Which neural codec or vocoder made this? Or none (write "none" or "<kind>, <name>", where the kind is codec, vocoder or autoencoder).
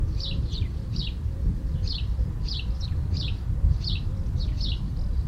vocoder, BigVGAN v2